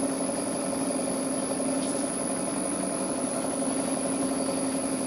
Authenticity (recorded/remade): recorded